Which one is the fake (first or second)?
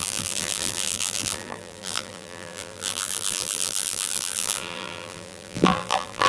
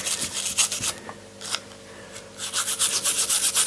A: first